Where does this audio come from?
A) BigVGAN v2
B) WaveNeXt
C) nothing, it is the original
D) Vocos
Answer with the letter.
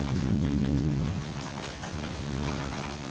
B